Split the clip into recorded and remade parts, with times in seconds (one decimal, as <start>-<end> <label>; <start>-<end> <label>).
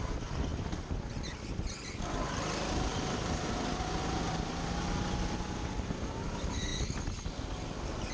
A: 0.0-8.1 recorded